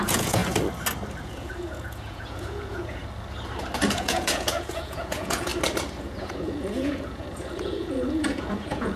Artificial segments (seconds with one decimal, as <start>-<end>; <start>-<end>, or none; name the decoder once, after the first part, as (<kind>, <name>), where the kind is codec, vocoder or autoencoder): 0.0-0.4 (vocoder, Vocos); 1.2-3.0; 3.9-5.5; 6.0-9.0